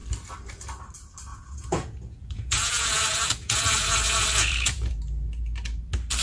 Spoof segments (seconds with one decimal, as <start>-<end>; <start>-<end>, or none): 1.3-5.0